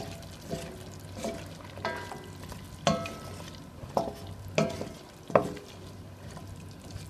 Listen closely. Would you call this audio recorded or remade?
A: recorded